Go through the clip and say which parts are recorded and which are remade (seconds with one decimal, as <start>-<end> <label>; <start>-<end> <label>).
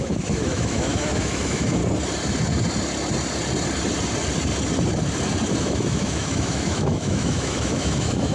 0.0-1.8 remade; 1.8-5.6 recorded; 5.6-8.3 remade